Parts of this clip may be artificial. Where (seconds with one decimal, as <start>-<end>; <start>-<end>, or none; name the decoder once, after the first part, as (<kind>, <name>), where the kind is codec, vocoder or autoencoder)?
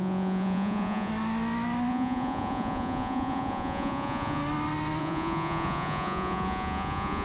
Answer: 0.0-1.1 (vocoder, Vocos); 1.9-4.4; 5.0-7.2